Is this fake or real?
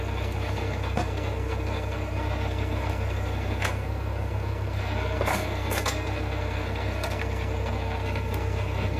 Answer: fake